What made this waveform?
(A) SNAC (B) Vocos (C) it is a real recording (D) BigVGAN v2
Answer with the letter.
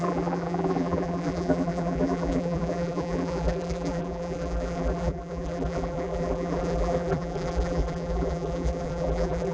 D